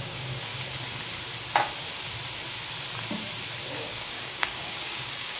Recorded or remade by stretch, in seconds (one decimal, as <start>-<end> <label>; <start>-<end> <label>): 0.0-0.5 remade; 0.5-3.7 recorded; 3.7-5.4 remade